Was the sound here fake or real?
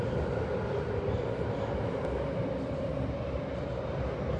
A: real